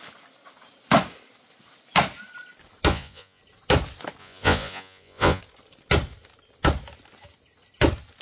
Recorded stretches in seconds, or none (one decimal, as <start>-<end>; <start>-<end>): 0.0-2.9; 3.4-4.2; 5.4-8.2